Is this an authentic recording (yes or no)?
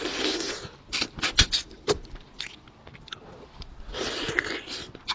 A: no